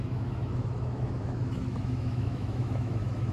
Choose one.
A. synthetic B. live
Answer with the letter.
A